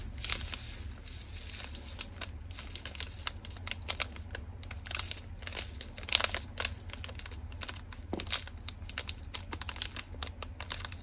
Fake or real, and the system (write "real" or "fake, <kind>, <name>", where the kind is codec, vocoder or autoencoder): real